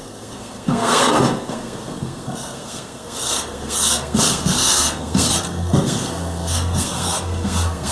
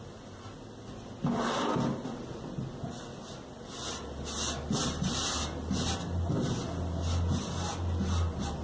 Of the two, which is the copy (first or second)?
first